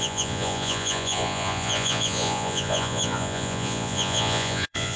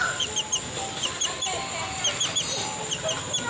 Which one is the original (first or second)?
second